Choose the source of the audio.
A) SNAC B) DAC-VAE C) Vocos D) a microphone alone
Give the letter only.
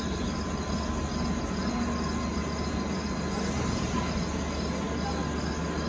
D